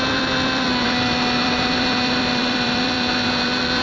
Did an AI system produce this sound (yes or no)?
yes